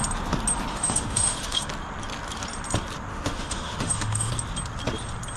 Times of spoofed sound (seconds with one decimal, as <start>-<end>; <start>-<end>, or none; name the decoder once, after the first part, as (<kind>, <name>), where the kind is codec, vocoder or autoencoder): 0.7-1.7 (autoencoder, DAC-VAE); 3.1-4.3